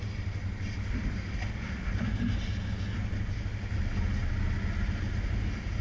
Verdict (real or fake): real